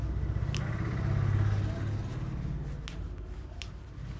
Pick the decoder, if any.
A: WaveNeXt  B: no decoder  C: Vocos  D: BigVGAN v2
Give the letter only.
B